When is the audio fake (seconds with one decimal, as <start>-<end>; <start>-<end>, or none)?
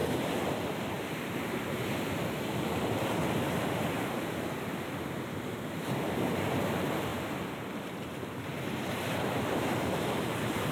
0.0-7.1; 8.0-10.7